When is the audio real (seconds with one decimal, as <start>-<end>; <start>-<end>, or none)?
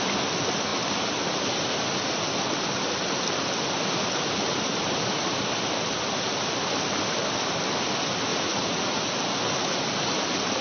0.0-8.3; 9.0-10.6